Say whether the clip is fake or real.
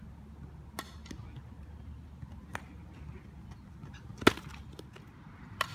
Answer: real